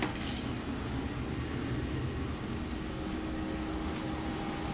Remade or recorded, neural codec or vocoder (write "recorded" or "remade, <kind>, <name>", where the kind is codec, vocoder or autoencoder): recorded